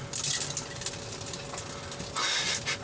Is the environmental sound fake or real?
real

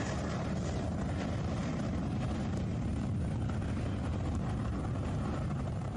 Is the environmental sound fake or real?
fake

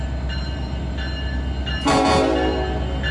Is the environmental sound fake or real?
real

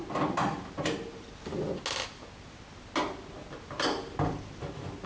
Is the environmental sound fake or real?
real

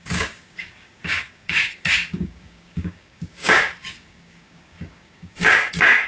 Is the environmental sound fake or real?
fake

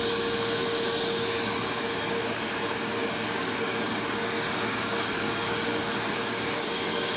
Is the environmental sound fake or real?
fake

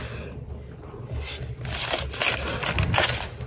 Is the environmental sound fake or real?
real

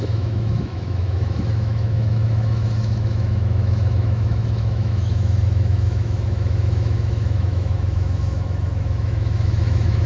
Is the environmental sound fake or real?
fake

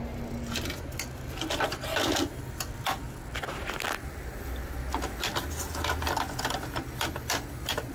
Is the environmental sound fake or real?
real